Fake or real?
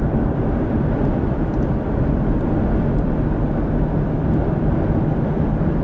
real